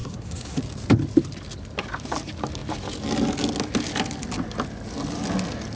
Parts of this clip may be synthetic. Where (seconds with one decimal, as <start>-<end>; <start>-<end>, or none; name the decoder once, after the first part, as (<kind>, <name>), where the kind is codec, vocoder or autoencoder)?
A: 0.0-0.6 (codec, SNAC)